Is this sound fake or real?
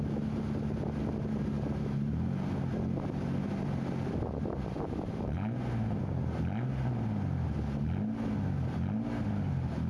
real